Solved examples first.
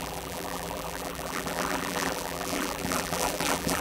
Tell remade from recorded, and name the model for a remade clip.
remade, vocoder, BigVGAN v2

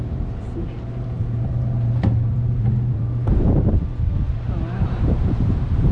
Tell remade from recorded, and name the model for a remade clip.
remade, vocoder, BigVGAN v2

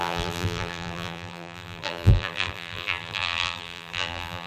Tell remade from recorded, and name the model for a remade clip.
remade, vocoder, BigVGAN v2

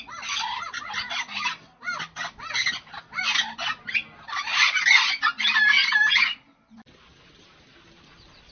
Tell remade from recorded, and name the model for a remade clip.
recorded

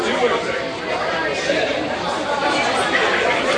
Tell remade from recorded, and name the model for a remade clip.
remade, vocoder, BigVGAN v2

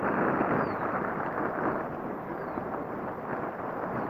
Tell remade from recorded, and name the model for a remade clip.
recorded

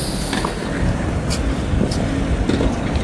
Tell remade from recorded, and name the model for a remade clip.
recorded